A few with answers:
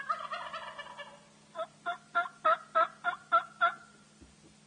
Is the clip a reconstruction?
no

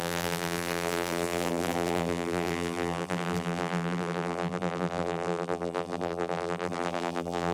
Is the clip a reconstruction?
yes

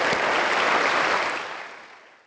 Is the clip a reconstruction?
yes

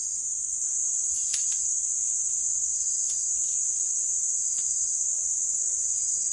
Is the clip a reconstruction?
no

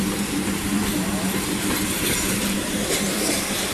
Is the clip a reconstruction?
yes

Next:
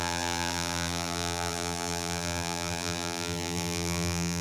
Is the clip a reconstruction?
yes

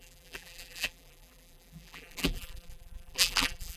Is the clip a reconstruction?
yes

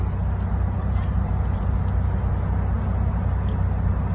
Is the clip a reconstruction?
no